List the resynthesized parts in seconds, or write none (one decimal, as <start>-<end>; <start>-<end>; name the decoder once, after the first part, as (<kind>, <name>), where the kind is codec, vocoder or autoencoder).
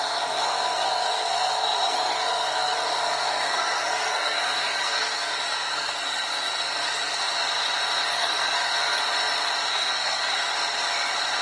0.0-7.4 (codec, SNAC); 8.1-9.0; 9.7-10.5